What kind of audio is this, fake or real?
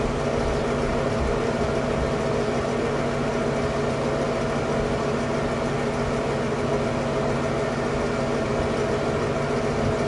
real